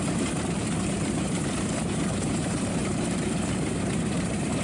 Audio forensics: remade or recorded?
remade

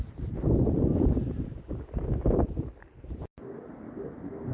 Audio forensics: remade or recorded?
recorded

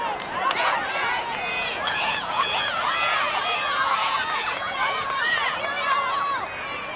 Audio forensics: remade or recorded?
remade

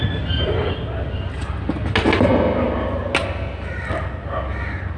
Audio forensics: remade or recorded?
recorded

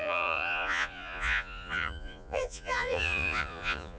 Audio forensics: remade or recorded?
remade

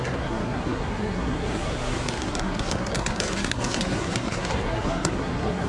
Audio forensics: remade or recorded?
remade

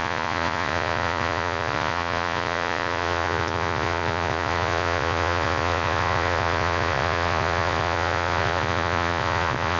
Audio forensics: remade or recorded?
remade